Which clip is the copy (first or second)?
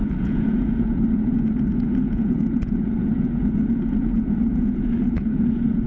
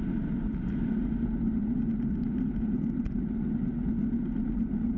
first